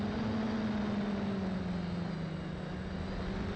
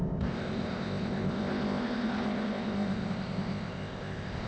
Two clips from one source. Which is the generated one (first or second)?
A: second